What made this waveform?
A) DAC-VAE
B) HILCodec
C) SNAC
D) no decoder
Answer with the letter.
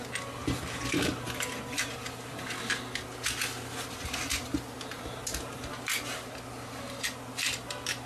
D